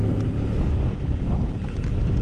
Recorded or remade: recorded